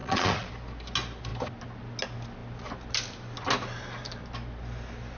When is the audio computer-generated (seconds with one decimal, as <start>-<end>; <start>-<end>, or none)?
0.0-0.5